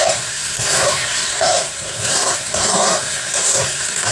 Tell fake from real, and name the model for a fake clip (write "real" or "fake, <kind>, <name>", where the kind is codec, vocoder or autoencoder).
fake, codec, SNAC